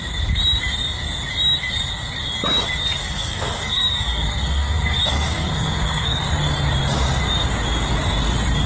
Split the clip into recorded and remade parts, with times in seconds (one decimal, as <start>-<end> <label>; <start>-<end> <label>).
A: 0.0-3.0 recorded; 3.0-6.2 remade; 6.2-8.7 recorded